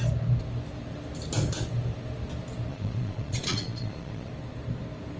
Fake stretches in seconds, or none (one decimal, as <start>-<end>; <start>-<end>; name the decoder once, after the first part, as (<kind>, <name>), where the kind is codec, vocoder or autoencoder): 2.7-4.3 (vocoder, Vocos)